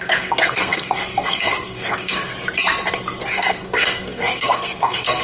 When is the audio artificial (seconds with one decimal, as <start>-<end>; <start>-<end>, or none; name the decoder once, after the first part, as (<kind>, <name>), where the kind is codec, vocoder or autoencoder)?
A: 0.0-2.3 (codec, SNAC); 3.3-5.2